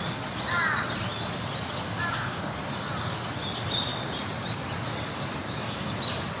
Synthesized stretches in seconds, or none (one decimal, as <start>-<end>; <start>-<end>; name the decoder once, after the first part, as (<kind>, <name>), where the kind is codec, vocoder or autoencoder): 1.8-2.7 (codec, DAC)